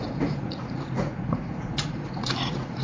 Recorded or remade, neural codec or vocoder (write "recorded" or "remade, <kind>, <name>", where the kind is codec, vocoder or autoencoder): remade, vocoder, Vocos